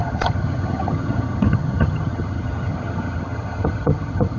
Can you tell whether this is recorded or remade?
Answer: remade